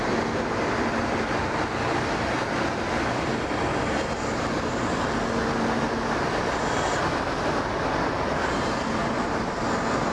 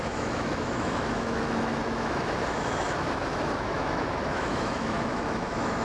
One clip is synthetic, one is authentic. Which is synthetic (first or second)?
second